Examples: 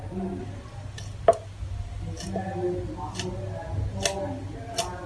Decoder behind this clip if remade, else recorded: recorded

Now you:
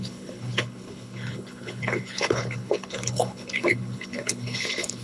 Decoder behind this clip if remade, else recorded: remade, codec, HILCodec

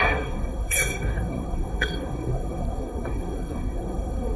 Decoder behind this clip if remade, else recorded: remade, codec, SNAC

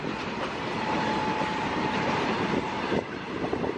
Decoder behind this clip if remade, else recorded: remade, vocoder, BigVGAN v2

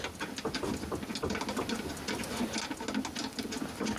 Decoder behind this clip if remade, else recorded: recorded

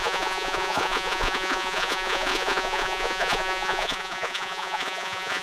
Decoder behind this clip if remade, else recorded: remade, vocoder, Vocos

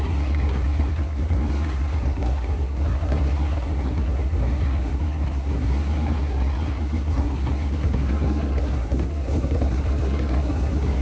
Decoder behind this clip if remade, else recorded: remade, codec, SNAC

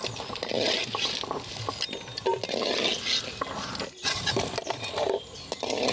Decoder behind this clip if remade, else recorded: recorded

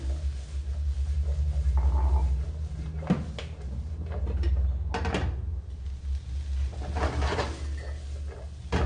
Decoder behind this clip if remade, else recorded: recorded